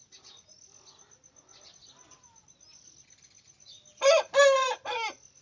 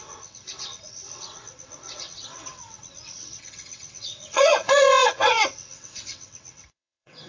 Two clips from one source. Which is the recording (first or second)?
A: first